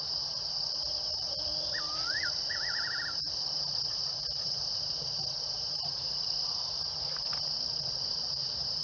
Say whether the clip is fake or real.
fake